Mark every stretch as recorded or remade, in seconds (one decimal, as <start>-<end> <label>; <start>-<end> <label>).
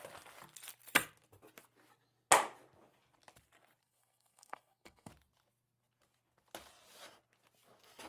0.0-3.8 recorded; 3.8-5.1 remade; 5.1-8.1 recorded